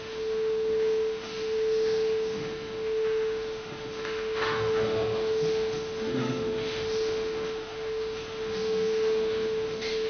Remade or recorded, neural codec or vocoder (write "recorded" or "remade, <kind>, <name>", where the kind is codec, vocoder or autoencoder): remade, autoencoder, DAC-VAE